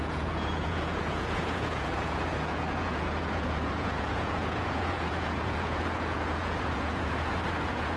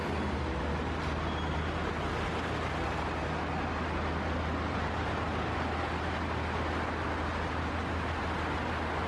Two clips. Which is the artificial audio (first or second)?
first